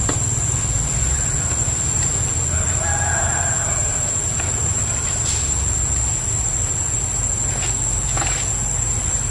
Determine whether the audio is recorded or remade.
recorded